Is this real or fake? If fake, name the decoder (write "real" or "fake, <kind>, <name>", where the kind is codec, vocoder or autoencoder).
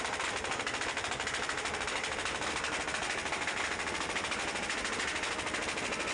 real